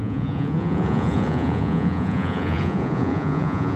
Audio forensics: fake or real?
fake